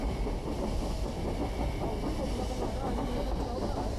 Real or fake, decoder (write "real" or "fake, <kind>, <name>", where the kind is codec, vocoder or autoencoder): real